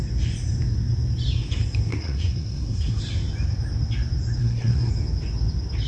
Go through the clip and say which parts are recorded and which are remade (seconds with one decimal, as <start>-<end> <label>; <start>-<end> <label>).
0.0-1.9 recorded; 1.9-3.0 remade; 3.0-4.4 recorded; 4.4-4.9 remade; 4.9-5.9 recorded